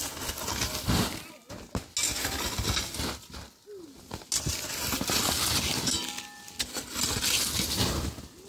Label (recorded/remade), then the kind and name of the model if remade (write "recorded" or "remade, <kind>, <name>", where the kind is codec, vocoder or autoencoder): recorded